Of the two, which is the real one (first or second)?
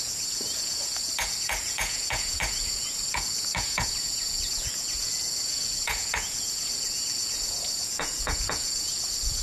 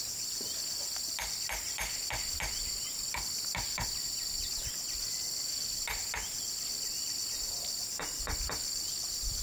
second